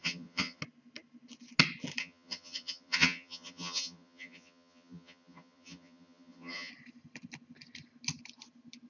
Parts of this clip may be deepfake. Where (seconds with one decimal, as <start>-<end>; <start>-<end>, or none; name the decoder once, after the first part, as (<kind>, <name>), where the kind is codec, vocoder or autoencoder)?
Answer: 0.0-0.6 (vocoder, HiFi-GAN); 2.0-6.7